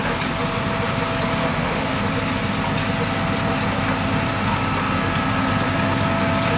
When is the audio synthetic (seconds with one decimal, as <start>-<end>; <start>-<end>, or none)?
1.4-2.0

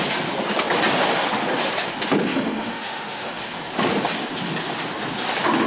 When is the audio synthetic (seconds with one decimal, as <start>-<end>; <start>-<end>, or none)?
2.3-3.3

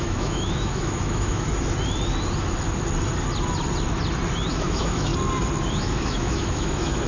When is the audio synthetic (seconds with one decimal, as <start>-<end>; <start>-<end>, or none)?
0.0-1.5; 4.5-5.1; 5.7-7.1

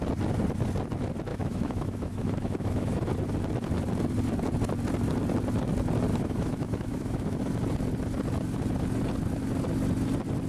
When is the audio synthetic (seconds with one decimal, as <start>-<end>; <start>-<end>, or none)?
1.3-3.1; 6.1-7.4

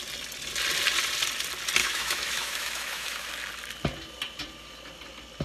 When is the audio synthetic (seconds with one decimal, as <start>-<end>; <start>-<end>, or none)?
1.8-3.3

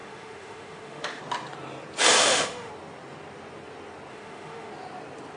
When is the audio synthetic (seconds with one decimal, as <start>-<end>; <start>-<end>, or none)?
0.0-1.2; 2.2-2.7; 4.1-4.7